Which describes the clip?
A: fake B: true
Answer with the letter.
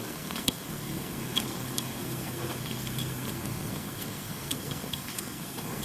A